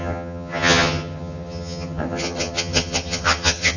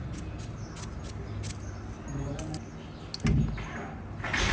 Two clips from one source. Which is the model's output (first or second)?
first